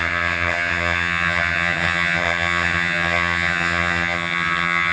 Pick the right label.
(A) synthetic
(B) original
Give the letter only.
A